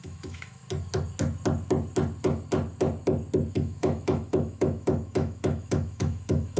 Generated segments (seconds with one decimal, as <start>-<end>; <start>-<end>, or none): 0.0-0.6; 3.5-6.6